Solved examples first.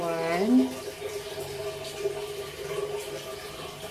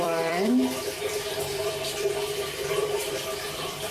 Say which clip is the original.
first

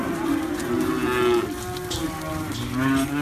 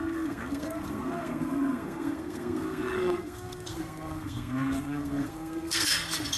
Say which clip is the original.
first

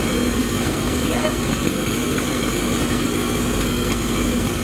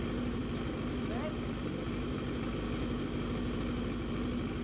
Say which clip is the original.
second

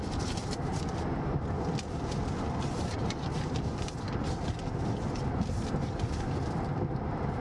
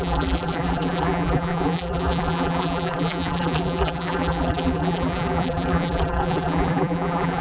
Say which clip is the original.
first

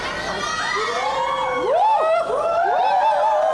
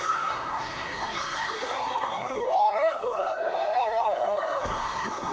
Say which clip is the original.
first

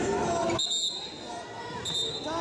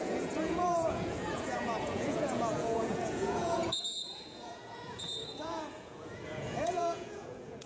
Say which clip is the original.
first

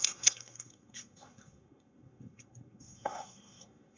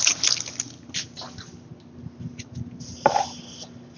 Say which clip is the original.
second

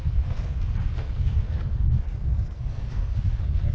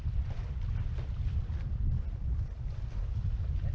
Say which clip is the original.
second